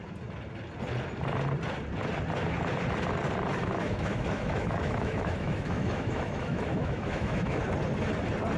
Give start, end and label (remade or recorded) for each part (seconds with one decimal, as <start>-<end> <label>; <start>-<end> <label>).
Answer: 0.0-3.6 recorded; 3.6-7.6 remade; 7.6-8.6 recorded